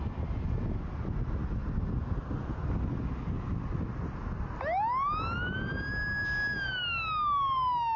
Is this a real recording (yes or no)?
yes